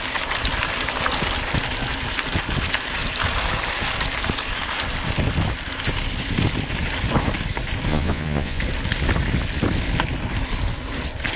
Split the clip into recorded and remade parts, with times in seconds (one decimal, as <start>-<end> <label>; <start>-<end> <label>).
0.0-7.9 recorded; 7.9-8.6 remade; 8.6-11.4 recorded

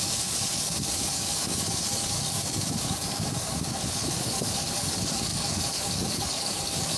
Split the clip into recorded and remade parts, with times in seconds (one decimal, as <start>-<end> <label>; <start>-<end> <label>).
0.0-7.0 remade